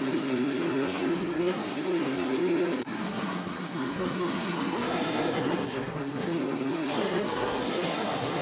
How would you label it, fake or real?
fake